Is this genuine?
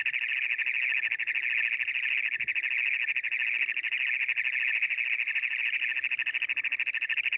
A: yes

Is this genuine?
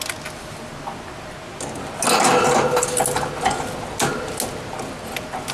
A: yes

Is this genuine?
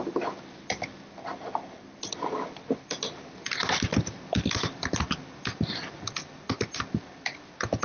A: yes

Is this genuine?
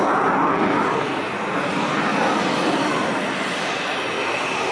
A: yes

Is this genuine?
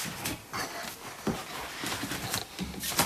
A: yes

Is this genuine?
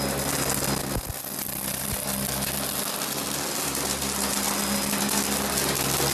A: yes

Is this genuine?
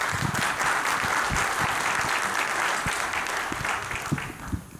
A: yes